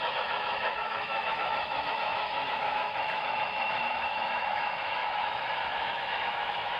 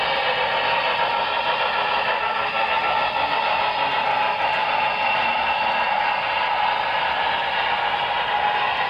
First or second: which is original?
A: second